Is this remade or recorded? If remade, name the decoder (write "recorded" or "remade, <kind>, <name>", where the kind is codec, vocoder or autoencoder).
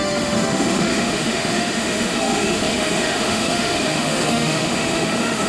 remade, autoencoder, DAC-VAE